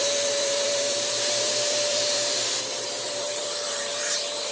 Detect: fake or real fake